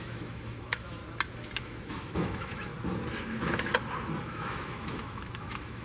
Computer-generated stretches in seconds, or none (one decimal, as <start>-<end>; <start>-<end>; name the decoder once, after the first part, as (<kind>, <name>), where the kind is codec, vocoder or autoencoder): 0.0-1.0 (autoencoder, DAC-VAE); 1.6-2.7; 3.2-3.7; 4.2-5.8